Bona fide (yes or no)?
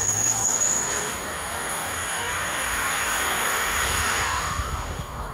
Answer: no